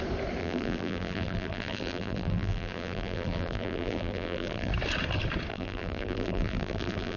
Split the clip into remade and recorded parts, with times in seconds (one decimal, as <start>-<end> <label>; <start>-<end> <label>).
0.0-0.4 recorded; 0.4-4.7 remade; 4.7-5.5 recorded; 5.5-7.2 remade